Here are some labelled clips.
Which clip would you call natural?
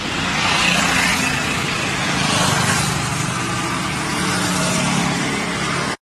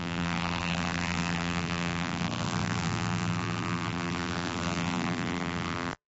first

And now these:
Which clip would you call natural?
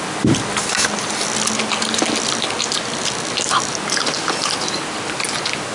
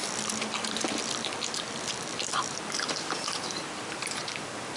first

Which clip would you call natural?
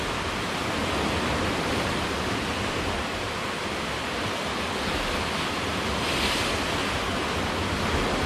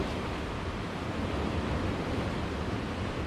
first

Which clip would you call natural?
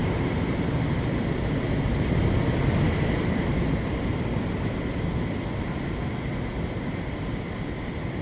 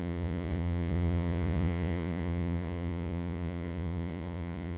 first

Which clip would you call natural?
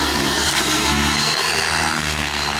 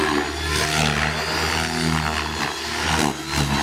second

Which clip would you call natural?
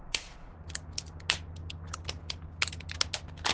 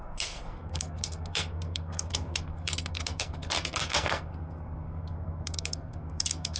first